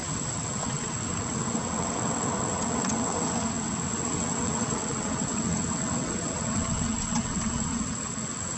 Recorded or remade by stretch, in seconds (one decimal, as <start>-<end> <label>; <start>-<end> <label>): 0.0-8.6 remade